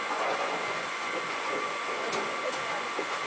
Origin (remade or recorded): remade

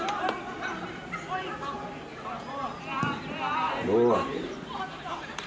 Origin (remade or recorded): recorded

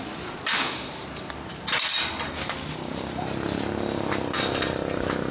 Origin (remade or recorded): recorded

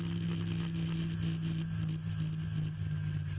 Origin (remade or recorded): recorded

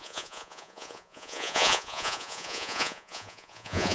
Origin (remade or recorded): remade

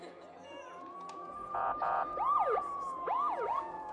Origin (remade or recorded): remade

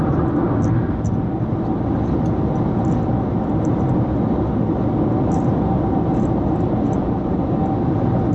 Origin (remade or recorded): recorded